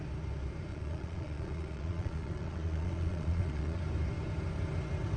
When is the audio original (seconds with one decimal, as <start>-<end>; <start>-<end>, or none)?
0.0-0.7; 3.8-5.2